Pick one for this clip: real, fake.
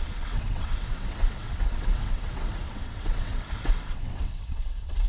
fake